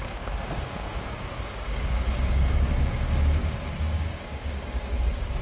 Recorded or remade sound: remade